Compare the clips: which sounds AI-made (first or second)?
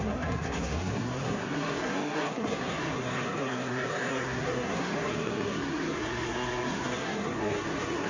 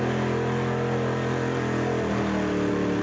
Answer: first